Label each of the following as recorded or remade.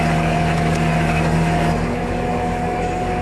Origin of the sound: remade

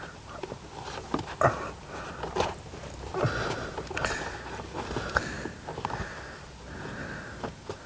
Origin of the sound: recorded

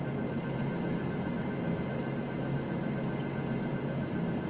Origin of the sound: recorded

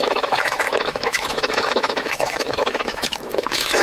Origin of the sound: remade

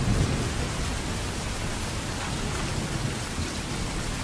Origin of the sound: recorded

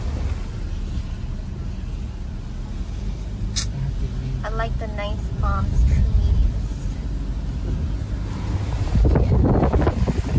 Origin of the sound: recorded